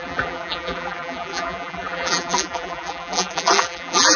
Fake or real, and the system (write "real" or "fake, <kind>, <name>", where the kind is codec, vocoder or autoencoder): fake, vocoder, BigVGAN v2